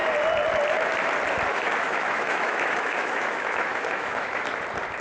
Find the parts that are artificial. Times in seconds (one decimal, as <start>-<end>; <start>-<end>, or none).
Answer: 1.5-4.5